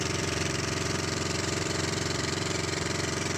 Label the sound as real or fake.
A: fake